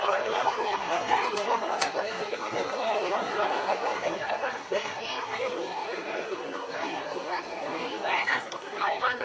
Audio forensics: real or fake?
fake